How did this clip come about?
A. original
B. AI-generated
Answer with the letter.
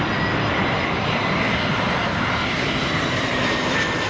B